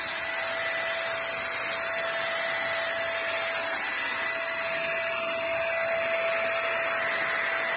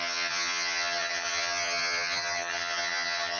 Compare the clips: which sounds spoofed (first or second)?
second